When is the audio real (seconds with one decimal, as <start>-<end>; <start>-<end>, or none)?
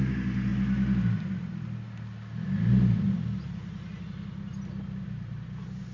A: 0.0-5.9